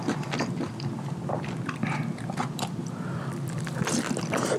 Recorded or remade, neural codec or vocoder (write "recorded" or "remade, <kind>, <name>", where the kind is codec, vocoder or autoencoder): remade, vocoder, BigVGAN v2